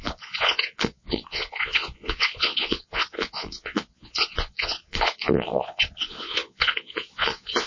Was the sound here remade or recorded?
remade